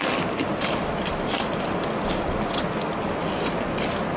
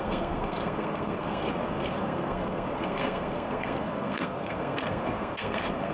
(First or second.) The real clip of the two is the first